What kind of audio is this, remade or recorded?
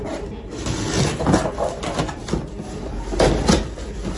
recorded